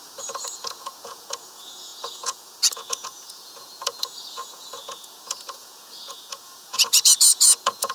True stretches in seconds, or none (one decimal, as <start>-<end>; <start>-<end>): none